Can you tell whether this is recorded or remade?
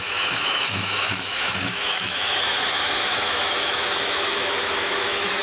remade